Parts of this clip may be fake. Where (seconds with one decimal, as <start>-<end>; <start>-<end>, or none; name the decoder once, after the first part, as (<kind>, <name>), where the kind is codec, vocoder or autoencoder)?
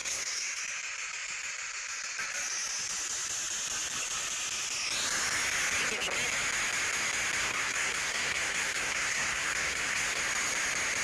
0.0-0.6 (codec, SNAC); 7.4-10.2